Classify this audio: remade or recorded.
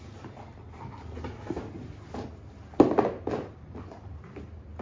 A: recorded